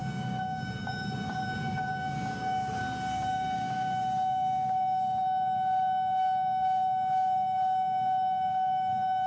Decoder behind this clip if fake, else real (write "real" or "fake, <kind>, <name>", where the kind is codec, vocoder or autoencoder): fake, codec, DAC